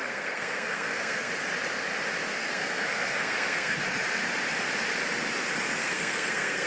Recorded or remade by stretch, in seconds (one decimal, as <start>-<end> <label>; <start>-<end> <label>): 0.0-1.3 remade; 1.3-2.4 recorded; 2.4-3.8 remade; 3.8-5.8 recorded; 5.8-6.7 remade